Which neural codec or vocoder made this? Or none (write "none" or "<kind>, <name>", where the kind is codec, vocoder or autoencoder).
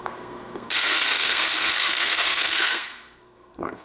codec, SNAC